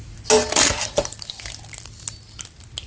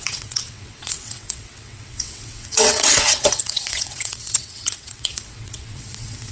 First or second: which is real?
first